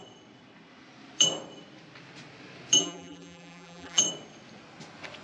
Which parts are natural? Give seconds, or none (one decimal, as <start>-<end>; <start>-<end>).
0.0-2.8; 4.0-5.2